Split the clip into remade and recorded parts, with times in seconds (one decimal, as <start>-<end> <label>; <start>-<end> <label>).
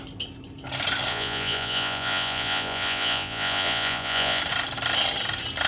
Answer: 0.0-1.1 recorded; 1.1-4.4 remade; 4.4-5.7 recorded